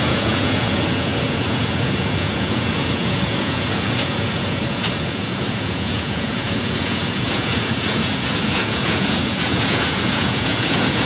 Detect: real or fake fake